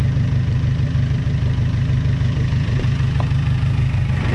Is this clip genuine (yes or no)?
no